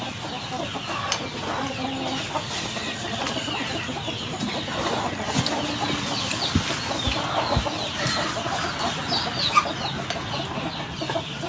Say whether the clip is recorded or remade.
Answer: recorded